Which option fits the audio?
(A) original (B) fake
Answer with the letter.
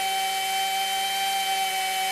A